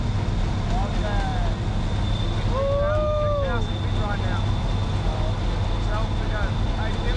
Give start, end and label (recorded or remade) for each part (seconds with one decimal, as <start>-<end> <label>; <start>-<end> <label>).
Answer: 0.0-7.2 recorded